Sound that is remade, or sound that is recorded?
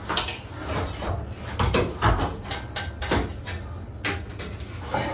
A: recorded